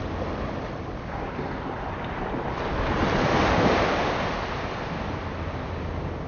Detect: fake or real real